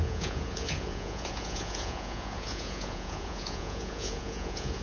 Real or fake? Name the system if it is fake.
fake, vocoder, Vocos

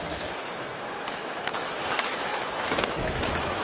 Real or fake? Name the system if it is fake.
fake, autoencoder, DAC-VAE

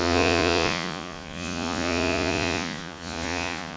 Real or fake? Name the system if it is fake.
fake, vocoder, Vocos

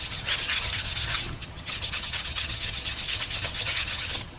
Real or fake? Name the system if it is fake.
fake, vocoder, HiFi-GAN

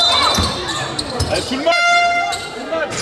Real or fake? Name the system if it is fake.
fake, vocoder, BigVGAN v2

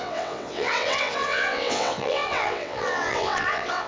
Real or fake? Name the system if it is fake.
fake, vocoder, WaveNeXt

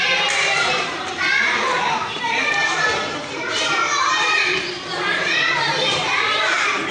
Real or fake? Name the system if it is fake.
fake, vocoder, BigVGAN v2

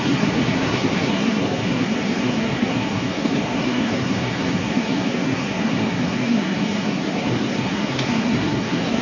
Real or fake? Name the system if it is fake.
fake, codec, SNAC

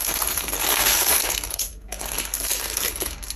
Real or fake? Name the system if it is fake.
fake, codec, SNAC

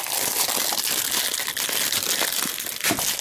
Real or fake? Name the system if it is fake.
fake, vocoder, BigVGAN v2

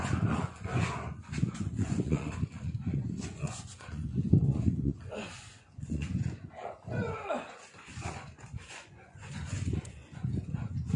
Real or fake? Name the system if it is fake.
fake, vocoder, Vocos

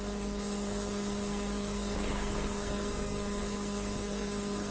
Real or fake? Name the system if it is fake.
fake, codec, SNAC